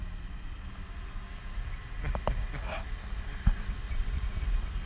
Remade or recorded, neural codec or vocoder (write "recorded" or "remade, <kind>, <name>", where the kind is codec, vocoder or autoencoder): recorded